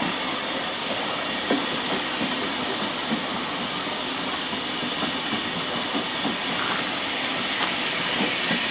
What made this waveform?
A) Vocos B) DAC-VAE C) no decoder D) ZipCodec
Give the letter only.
C